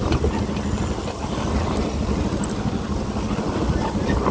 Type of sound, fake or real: real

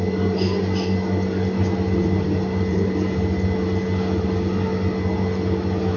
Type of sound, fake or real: real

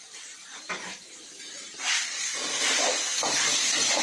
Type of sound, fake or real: real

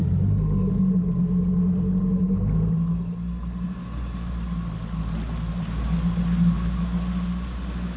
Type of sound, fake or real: real